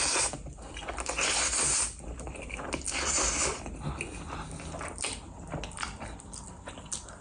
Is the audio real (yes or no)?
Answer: yes